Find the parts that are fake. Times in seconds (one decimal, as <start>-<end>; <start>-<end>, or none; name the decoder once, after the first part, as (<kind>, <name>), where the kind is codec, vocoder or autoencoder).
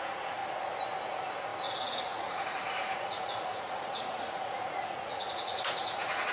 0.0-0.4 (vocoder, Vocos); 1.0-6.3